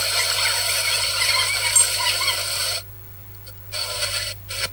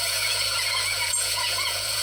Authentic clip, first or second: first